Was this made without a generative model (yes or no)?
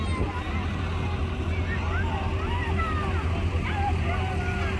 yes